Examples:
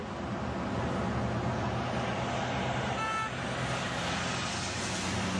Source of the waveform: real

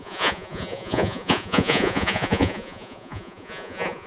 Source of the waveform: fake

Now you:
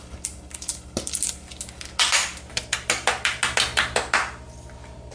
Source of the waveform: real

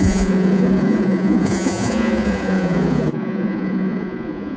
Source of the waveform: fake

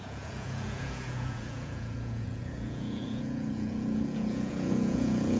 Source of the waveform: fake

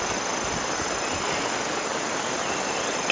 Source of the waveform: real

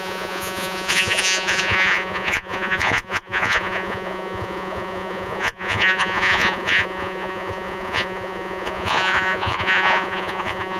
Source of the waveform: fake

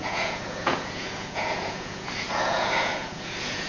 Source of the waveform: fake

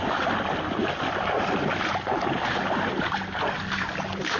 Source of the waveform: real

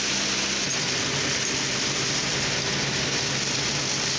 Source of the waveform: real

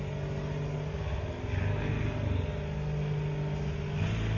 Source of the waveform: real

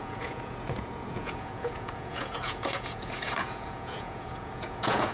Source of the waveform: fake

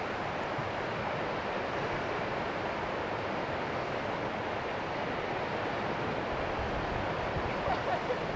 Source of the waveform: real